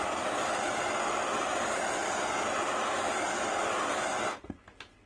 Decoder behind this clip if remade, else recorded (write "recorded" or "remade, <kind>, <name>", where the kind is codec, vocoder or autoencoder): remade, vocoder, BigVGAN v2